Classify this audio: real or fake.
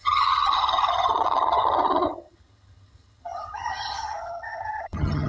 fake